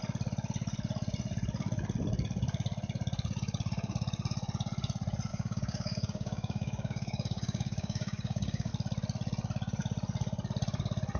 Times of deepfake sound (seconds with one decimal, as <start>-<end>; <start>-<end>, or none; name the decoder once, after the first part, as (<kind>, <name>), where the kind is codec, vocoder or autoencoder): 5.3-8.7 (codec, DAC)